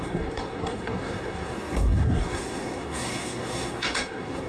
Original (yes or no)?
no